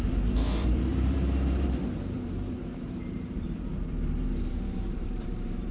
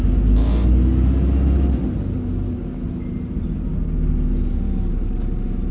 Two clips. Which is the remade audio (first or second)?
first